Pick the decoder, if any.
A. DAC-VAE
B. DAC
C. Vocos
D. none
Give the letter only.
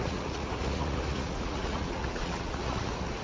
C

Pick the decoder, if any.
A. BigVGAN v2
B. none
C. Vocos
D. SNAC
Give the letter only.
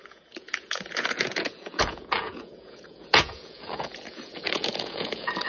C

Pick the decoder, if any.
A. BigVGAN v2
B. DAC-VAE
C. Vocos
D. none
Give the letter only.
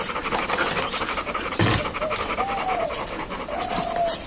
D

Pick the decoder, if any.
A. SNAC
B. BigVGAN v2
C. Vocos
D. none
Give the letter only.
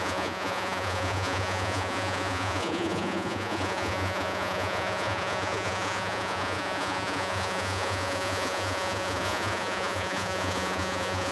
C